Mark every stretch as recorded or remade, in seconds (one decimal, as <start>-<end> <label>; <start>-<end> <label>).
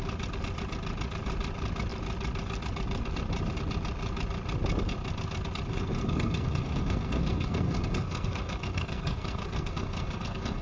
0.0-5.7 recorded; 5.7-10.6 remade